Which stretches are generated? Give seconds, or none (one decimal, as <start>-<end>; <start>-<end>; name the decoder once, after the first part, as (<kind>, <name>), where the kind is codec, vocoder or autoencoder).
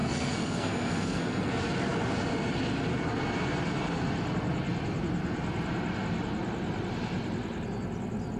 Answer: 0.0-1.5 (codec, SNAC)